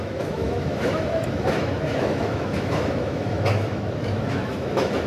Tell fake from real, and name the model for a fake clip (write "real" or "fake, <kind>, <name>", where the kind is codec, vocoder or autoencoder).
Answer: fake, autoencoder, DAC-VAE